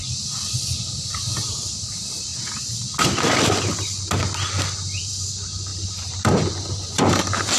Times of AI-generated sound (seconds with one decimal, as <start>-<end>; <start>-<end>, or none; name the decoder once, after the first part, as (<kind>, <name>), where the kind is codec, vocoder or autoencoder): 0.8-2.3 (vocoder, BigVGAN v2); 5.0-7.6